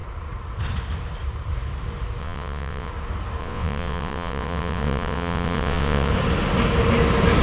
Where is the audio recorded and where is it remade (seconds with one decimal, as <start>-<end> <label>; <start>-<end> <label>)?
0.0-2.2 recorded; 2.2-2.9 remade; 2.9-3.4 recorded; 3.4-6.1 remade; 6.1-7.4 recorded